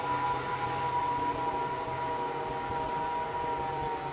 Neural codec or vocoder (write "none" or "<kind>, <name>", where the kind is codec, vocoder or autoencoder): none